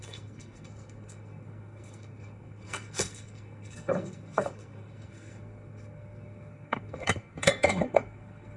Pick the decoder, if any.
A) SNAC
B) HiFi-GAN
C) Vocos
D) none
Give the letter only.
A